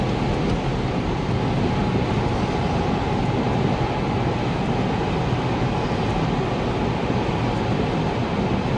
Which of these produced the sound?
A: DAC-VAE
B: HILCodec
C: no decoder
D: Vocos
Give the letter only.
C